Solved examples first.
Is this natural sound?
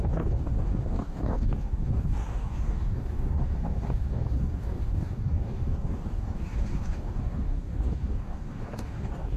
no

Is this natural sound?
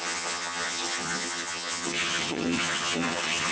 no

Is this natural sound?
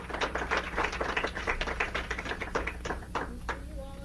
yes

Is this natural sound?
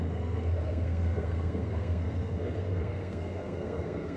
no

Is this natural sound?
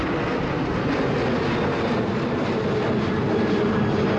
yes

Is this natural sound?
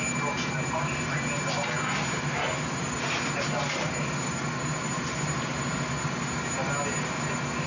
yes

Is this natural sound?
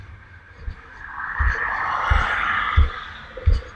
yes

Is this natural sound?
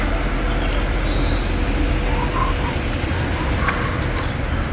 yes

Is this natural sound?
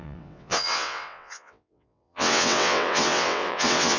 no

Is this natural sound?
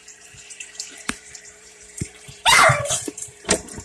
no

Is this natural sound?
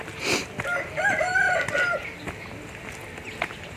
yes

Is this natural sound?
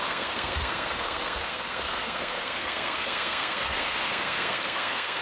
no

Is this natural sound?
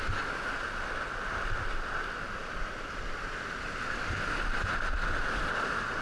yes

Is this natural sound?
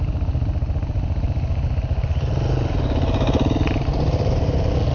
yes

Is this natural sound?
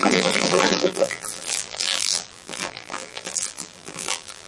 no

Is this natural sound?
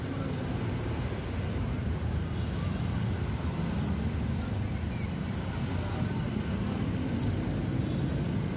yes